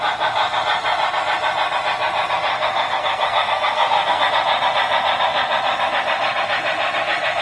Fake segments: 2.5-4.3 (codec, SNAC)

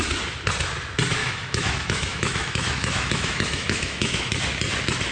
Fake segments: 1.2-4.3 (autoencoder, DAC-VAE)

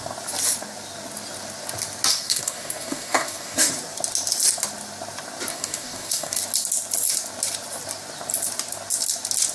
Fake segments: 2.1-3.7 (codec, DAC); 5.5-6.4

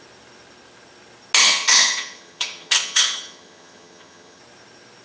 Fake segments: 1.4-4.4 (vocoder, HiFi-GAN)

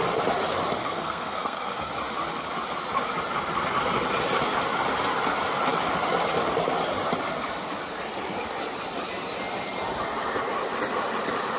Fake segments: 0.8-1.9 (codec, SNAC)

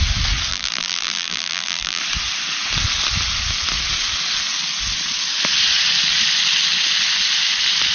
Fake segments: 0.5-2.0 (vocoder, BigVGAN v2)

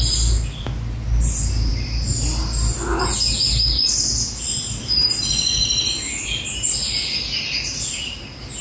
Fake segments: none